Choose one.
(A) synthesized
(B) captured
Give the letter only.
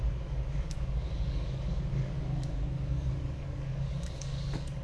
A